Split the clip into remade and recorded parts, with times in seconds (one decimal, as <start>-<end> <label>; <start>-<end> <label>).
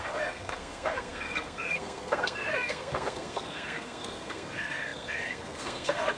0.0-6.2 remade